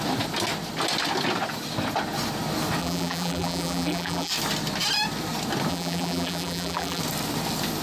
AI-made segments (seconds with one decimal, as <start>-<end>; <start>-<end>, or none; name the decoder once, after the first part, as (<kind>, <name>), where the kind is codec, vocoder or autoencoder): 2.8-4.3 (vocoder, BigVGAN v2); 5.7-7.0